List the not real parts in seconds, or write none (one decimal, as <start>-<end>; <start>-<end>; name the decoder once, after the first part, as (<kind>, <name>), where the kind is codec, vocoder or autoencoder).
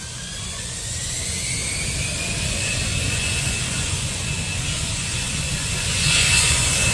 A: 0.0-1.6 (vocoder, Vocos); 2.2-6.9